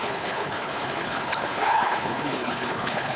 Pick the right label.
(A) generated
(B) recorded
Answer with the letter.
A